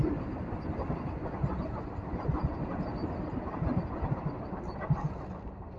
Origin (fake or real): real